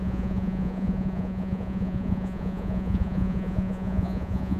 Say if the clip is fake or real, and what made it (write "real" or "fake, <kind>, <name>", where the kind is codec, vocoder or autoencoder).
fake, vocoder, Vocos